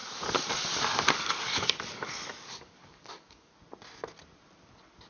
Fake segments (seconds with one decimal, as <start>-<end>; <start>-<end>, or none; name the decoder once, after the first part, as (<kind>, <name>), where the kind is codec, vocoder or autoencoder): 0.0-3.5 (codec, DAC)